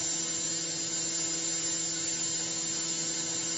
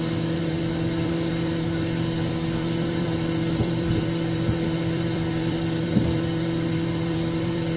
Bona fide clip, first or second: first